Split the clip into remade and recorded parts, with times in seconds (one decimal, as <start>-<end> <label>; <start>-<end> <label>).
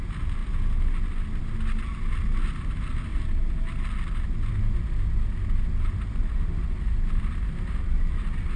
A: 0.0-8.6 recorded